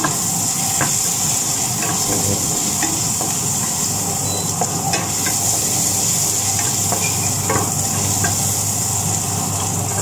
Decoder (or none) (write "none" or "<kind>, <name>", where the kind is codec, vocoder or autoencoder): none